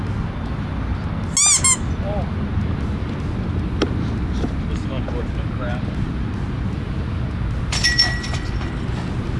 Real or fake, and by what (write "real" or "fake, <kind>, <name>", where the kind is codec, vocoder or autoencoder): real